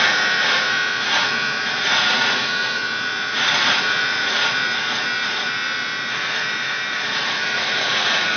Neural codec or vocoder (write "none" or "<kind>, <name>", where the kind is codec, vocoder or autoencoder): vocoder, Vocos